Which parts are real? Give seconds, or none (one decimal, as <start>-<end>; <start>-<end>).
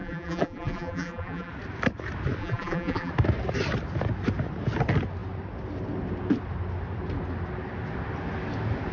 1.5-2.4; 3.1-8.9